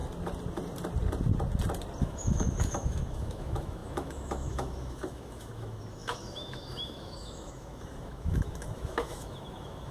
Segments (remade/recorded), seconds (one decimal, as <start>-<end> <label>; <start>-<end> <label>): 0.0-2.0 recorded; 2.0-9.9 remade

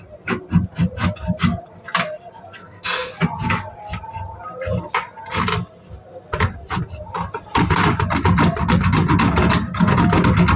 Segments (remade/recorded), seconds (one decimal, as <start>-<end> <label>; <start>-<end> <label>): 0.0-2.6 recorded; 2.6-3.1 remade; 3.1-10.6 recorded

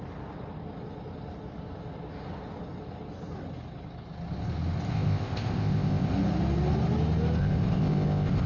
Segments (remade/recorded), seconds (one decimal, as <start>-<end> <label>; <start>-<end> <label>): 0.0-4.9 recorded; 4.9-6.1 remade; 6.1-7.4 recorded; 7.4-8.5 remade

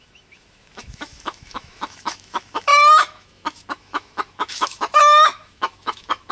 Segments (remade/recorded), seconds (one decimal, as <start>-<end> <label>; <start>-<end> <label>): 0.0-6.3 remade

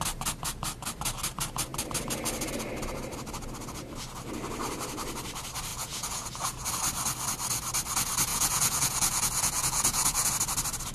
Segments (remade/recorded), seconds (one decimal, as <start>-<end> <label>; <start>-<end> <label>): 0.0-5.7 recorded; 5.7-6.7 remade; 6.7-8.3 recorded; 8.3-10.3 remade; 10.3-10.9 recorded

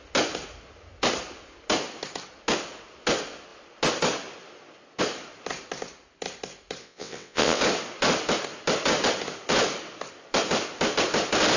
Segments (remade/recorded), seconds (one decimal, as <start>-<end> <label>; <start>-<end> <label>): 0.0-6.8 recorded; 6.8-7.6 remade; 7.6-11.6 recorded

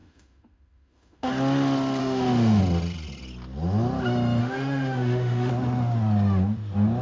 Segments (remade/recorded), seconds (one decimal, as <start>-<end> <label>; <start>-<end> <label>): 0.0-1.3 remade; 1.3-2.0 recorded; 2.0-2.6 remade; 2.6-4.4 recorded; 4.4-5.5 remade; 5.5-7.0 recorded

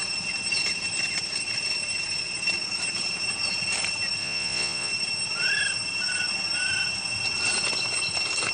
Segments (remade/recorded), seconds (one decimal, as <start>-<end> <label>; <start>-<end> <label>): 0.0-4.2 recorded; 4.2-4.9 remade; 4.9-8.5 recorded